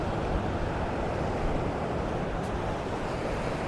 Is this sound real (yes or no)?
yes